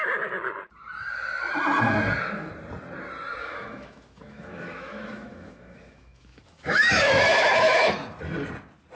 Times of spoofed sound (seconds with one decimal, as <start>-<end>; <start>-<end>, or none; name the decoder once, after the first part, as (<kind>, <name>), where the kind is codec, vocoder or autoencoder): 3.4-7.9 (autoencoder, DAC-VAE)